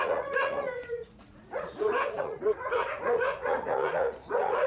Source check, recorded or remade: remade